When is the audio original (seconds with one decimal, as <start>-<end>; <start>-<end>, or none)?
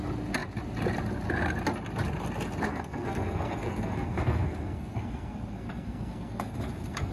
0.0-2.7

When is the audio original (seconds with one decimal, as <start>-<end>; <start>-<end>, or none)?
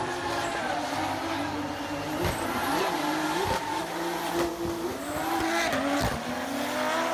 0.0-7.1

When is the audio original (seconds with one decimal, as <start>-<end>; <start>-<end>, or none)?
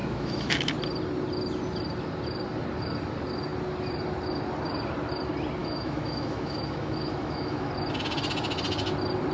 0.7-5.6; 7.7-9.3